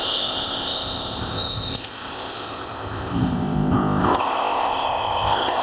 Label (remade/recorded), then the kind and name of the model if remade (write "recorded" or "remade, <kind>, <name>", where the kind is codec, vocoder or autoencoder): remade, codec, ZipCodec